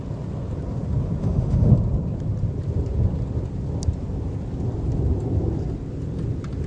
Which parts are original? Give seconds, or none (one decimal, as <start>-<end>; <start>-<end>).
0.0-1.2; 1.7-6.7